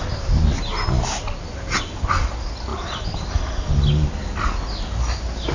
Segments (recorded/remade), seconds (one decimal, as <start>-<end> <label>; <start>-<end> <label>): 0.0-2.7 recorded; 2.7-3.8 remade; 3.8-5.5 recorded